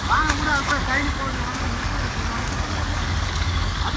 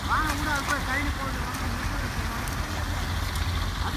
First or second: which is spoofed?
first